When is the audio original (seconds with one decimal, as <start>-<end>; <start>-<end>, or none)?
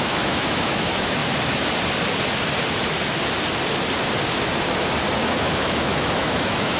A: 1.2-5.3